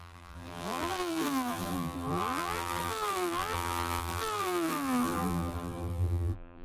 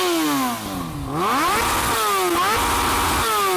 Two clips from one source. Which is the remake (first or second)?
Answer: first